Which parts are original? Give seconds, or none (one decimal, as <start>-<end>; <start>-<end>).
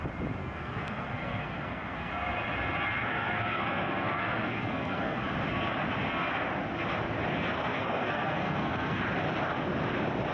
0.0-0.4; 2.1-3.1; 5.2-7.7; 9.0-10.3